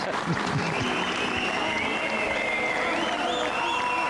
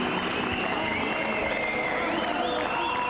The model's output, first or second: second